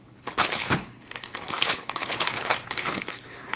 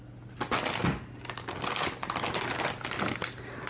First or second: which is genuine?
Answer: second